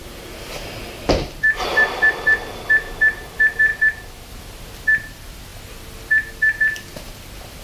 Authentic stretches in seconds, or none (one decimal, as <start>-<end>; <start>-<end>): 0.0-1.7; 2.5-3.7; 4.3-7.6